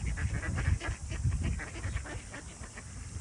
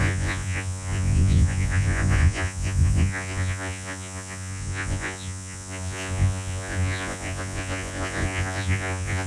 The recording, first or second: first